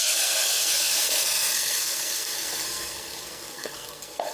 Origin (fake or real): fake